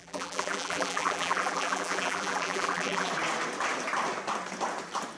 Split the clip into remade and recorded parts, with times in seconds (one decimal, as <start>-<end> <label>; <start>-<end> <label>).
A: 0.0-3.1 remade; 3.1-5.2 recorded